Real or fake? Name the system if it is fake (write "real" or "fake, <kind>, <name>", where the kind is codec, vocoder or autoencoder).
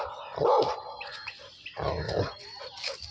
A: real